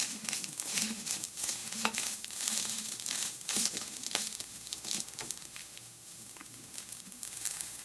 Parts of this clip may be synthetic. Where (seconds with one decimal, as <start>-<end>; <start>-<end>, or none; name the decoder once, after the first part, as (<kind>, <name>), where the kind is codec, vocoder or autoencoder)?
0.0-7.8 (autoencoder, DAC-VAE)